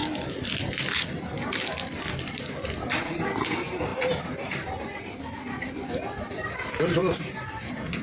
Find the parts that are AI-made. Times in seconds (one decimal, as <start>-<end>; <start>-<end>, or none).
1.5-8.0